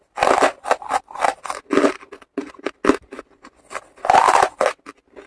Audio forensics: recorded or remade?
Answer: recorded